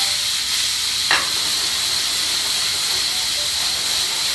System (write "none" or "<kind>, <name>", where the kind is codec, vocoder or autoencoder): none